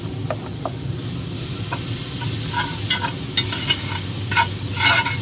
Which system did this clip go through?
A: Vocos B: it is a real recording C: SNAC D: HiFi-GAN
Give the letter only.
B